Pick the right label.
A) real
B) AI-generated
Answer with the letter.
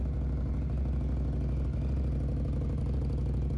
A